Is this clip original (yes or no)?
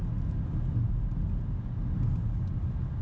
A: yes